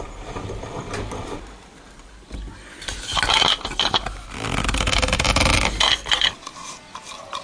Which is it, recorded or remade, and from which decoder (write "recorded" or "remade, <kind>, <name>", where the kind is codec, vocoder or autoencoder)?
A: recorded